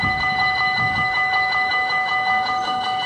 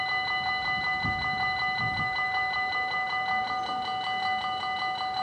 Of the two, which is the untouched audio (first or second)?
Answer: second